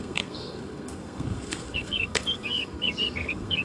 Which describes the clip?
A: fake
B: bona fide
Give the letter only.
A